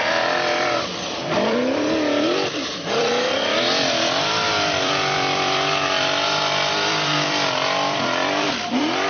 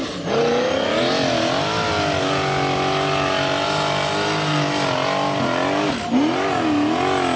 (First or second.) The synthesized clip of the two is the first